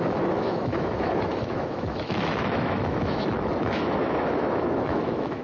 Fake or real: fake